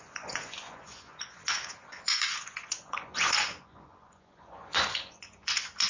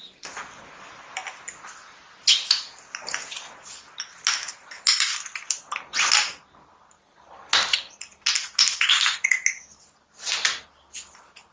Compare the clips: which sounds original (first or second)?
second